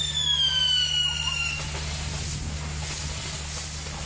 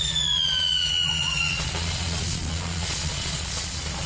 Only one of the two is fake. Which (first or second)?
second